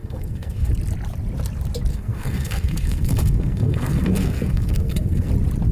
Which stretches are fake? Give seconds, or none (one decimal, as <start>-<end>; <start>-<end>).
0.0-0.7; 1.9-5.3